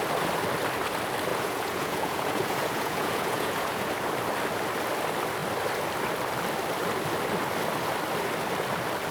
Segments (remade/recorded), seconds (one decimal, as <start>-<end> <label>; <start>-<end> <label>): 0.0-1.3 recorded; 1.3-3.9 remade; 3.9-9.1 recorded